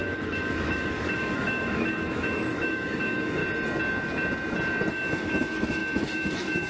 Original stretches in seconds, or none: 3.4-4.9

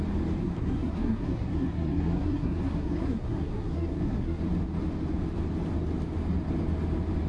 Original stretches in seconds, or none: 0.0-0.4; 4.4-7.3

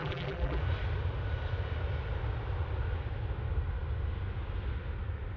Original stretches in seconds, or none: 0.6-5.4

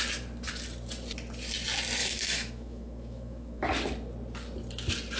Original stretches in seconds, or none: 0.0-2.0; 3.6-5.2

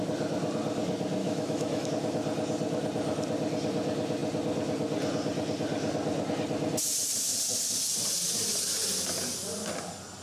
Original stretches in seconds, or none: 0.0-1.2; 1.9-10.2

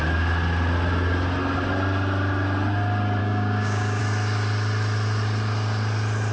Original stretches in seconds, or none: 0.0-3.2; 4.0-6.3

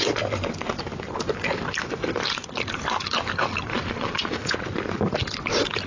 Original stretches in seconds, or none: 0.0-3.7; 4.7-5.9

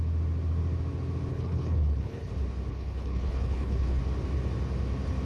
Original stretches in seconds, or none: 0.0-1.3; 2.3-2.7; 4.0-5.2